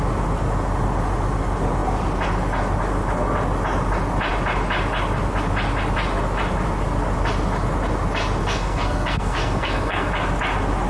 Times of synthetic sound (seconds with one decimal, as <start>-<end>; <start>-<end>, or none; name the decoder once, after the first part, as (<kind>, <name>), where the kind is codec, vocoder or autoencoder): 8.4-10.1 (codec, SNAC)